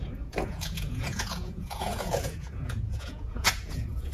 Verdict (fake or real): fake